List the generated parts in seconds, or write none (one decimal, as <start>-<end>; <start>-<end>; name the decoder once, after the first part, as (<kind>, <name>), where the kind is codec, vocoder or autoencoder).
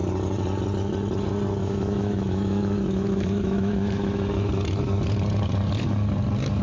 1.6-4.5 (autoencoder, DAC-VAE)